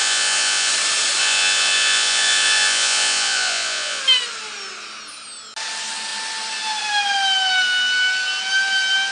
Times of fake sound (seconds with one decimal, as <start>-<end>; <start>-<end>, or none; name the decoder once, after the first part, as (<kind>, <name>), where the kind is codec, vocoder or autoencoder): 0.0-0.7 (vocoder, Vocos); 1.2-4.0